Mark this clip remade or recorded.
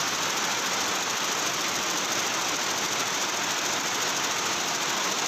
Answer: recorded